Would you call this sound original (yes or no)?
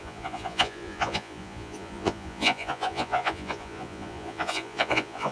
no